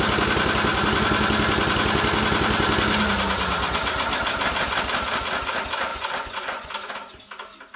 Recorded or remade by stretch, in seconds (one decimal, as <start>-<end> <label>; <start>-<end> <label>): 0.0-5.9 recorded; 5.9-6.7 remade; 6.7-7.8 recorded